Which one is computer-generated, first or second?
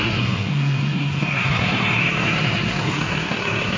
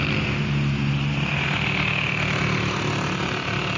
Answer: first